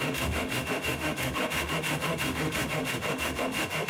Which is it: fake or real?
fake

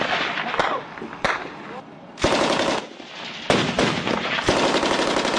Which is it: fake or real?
real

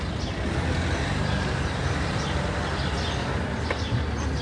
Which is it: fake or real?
real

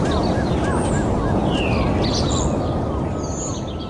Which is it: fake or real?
real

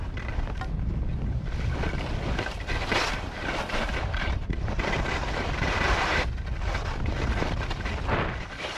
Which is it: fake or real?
real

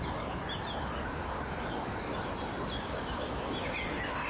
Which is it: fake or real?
real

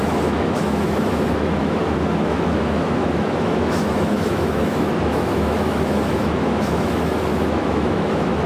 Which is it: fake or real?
fake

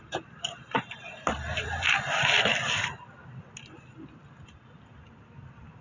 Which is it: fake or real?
real